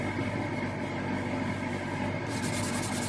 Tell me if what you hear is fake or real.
real